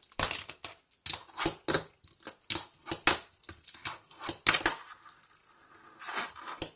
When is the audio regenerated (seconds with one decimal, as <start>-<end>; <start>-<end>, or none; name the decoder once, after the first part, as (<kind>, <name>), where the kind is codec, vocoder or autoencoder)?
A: none